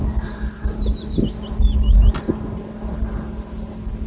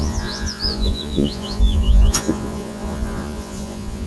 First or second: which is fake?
second